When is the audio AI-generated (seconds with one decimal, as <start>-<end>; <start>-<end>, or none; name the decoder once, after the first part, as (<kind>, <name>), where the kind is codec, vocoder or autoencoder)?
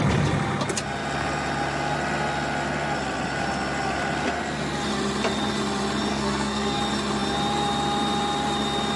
6.1-6.8 (codec, SNAC)